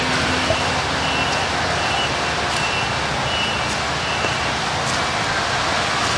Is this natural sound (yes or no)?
yes